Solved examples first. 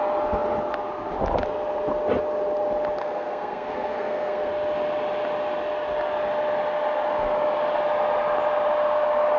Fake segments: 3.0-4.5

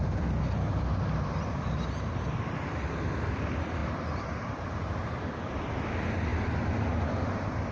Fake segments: 0.0-3.8; 4.6-6.3